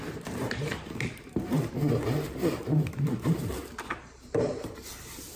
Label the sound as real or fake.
fake